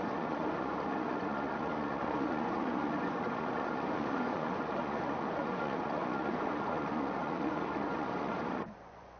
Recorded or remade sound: remade